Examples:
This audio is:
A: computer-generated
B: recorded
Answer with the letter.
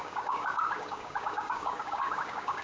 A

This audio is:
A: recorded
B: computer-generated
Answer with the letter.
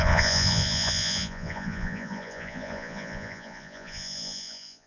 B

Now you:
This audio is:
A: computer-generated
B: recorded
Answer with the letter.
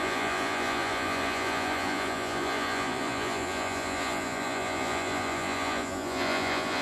A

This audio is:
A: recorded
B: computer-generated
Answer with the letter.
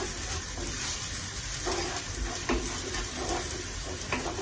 B